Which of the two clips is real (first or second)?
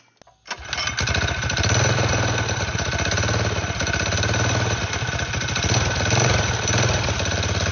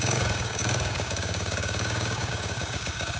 first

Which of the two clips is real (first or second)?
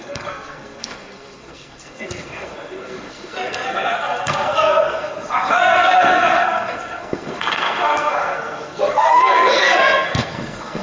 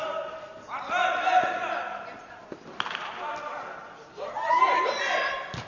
second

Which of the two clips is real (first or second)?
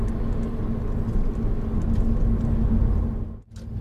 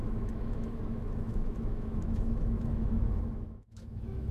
first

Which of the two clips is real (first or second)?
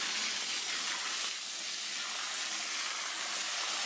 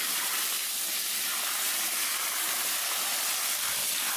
first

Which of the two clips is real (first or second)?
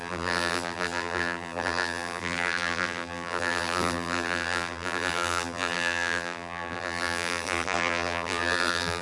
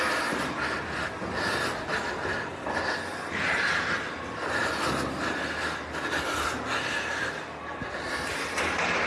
second